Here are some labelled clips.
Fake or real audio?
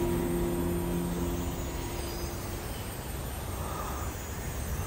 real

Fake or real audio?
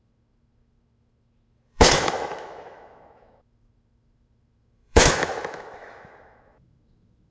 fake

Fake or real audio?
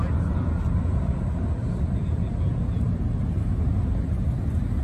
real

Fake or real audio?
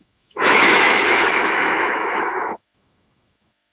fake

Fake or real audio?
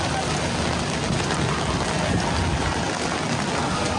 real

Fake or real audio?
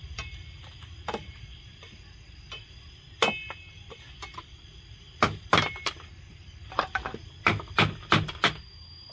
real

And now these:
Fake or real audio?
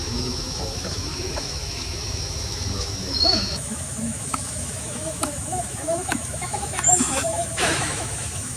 fake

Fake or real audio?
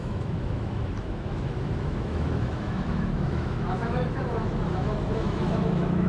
fake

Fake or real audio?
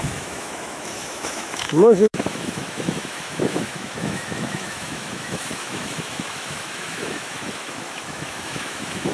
fake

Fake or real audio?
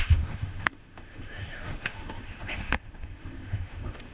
fake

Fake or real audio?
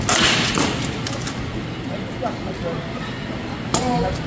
real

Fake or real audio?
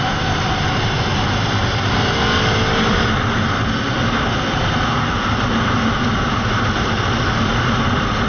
real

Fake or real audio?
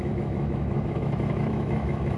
fake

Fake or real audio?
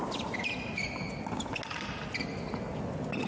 real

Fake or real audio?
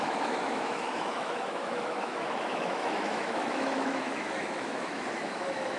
fake